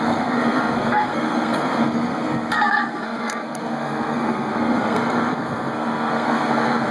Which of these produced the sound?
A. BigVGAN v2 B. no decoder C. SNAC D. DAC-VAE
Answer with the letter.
C